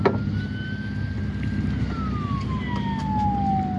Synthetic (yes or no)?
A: no